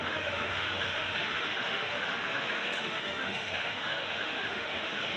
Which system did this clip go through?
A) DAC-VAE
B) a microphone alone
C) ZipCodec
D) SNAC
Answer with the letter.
A